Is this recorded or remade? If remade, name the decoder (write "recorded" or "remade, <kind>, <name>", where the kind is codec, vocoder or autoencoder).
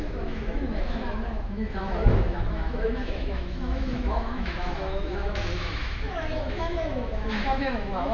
remade, autoencoder, DAC-VAE